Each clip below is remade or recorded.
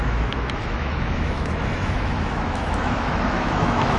remade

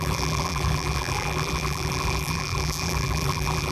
remade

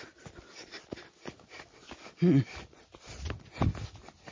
recorded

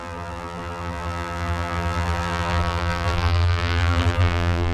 remade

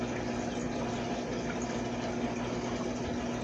recorded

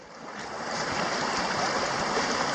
remade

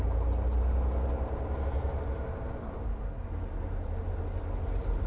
recorded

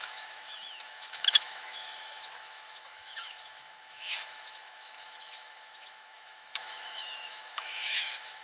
remade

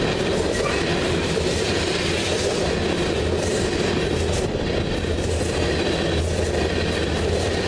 recorded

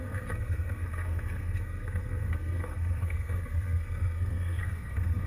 remade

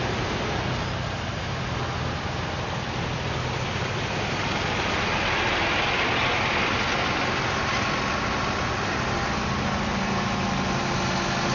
recorded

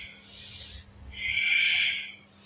recorded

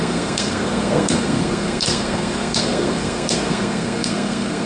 remade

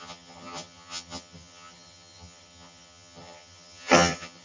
remade